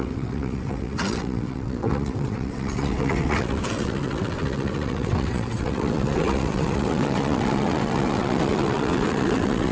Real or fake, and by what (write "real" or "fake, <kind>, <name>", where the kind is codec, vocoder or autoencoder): fake, vocoder, WaveNeXt